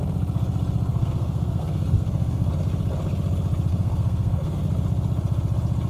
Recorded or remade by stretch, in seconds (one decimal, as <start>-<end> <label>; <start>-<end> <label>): 0.0-0.9 recorded; 0.9-2.5 remade; 2.5-3.7 recorded; 3.7-4.6 remade; 4.6-5.9 recorded